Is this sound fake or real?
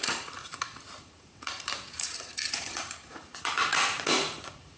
fake